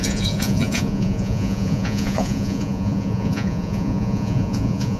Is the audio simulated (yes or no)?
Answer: yes